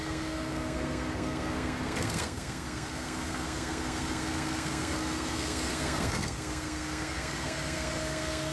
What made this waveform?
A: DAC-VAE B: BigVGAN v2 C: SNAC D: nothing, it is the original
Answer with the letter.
C